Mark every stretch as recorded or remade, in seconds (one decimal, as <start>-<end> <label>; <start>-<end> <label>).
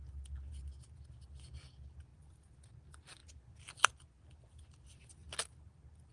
0.0-6.1 recorded